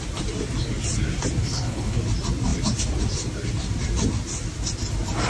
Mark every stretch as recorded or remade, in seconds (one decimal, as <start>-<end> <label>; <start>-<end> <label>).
0.0-1.4 recorded; 1.4-2.0 remade; 2.0-5.3 recorded